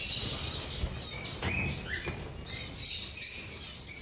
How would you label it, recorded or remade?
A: recorded